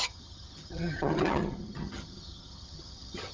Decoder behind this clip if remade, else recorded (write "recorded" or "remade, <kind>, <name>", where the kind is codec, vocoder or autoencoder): remade, vocoder, HiFi-GAN